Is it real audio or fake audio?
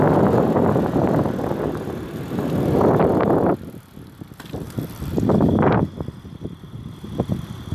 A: real